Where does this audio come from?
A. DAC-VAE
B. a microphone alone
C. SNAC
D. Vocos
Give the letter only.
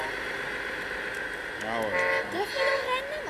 B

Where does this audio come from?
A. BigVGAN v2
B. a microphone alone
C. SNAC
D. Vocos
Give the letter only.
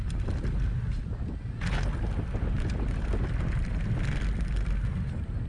B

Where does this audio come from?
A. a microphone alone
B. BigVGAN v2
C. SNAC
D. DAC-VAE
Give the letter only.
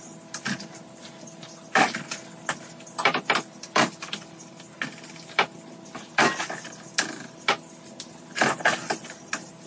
A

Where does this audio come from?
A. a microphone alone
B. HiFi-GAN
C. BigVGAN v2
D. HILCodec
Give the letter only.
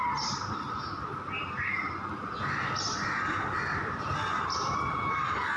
A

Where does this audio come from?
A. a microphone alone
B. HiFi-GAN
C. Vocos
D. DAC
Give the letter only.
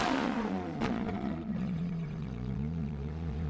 C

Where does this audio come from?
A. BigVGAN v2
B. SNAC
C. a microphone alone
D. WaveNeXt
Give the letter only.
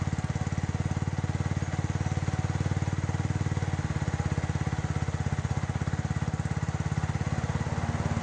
C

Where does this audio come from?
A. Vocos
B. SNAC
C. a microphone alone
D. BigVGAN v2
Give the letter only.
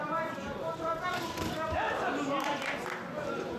C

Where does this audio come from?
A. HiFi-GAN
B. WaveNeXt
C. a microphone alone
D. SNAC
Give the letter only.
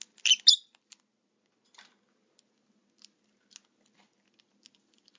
C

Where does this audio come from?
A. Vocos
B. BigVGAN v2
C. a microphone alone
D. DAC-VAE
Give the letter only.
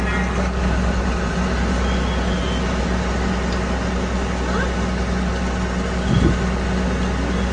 C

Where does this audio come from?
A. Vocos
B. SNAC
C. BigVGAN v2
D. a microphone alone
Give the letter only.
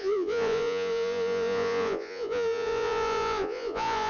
A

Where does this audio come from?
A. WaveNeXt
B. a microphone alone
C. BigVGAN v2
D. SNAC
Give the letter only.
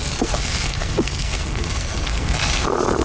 D